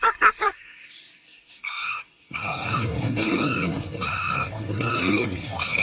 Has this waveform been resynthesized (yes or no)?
yes